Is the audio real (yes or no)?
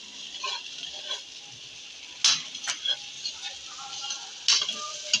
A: yes